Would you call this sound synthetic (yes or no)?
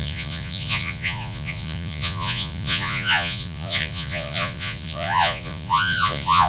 yes